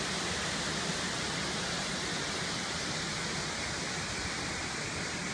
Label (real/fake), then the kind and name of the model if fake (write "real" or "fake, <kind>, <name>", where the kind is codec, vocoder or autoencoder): real